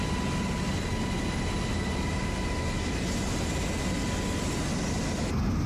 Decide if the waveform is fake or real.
real